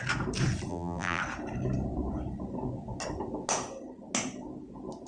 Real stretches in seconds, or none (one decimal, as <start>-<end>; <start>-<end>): 0.0-0.7; 1.2-5.1